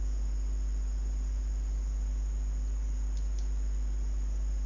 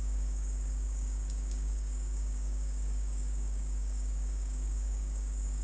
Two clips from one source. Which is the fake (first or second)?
second